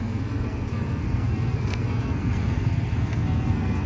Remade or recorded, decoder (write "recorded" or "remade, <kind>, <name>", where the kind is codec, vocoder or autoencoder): remade, codec, SNAC